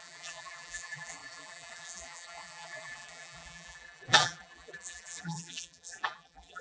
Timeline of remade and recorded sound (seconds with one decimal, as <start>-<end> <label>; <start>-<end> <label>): 0.0-6.6 remade